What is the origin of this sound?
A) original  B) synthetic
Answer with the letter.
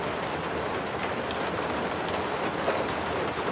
A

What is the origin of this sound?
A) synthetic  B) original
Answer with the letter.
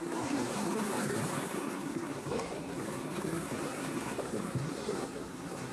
A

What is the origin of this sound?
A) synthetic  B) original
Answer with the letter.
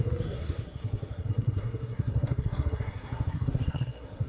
A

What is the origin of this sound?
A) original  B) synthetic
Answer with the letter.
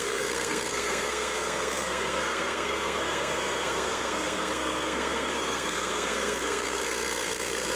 B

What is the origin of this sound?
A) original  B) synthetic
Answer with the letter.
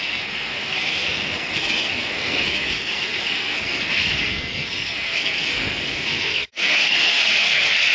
B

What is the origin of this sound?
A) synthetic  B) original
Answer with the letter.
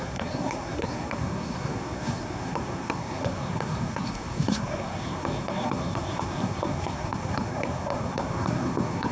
A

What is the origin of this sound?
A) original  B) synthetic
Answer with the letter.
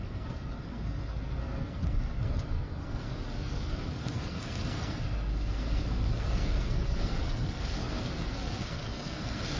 B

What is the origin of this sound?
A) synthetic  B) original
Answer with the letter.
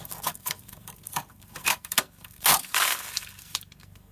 A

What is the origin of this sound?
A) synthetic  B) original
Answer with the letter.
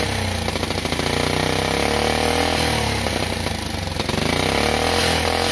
B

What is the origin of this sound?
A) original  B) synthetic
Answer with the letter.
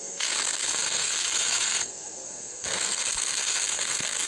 B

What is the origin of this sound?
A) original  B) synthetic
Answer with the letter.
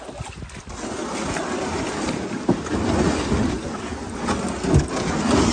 A